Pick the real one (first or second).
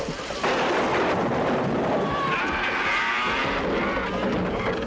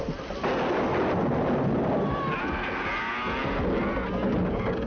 second